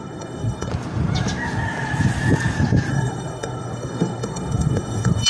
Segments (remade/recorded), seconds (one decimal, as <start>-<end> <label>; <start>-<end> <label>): 0.0-0.7 remade; 0.7-2.9 recorded; 2.9-5.3 remade